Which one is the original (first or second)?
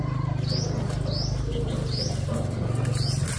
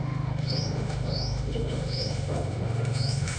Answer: first